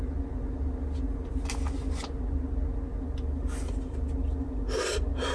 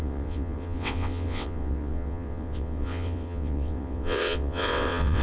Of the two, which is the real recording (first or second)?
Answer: first